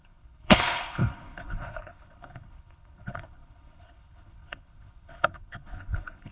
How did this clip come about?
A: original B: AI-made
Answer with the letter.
B